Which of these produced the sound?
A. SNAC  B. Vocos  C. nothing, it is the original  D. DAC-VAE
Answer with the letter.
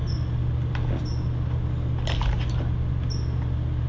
C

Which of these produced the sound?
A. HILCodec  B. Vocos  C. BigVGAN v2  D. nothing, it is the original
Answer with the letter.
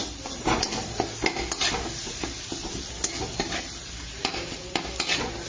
D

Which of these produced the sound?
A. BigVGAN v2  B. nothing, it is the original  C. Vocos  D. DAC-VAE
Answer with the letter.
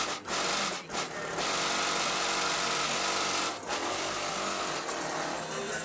B